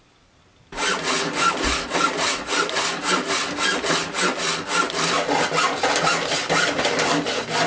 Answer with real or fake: real